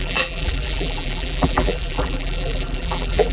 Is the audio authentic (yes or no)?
no